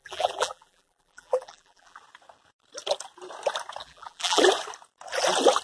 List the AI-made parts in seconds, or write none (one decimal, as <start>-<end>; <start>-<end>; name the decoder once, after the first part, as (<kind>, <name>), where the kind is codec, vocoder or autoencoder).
0.0-2.0 (vocoder, BigVGAN v2); 3.8-4.4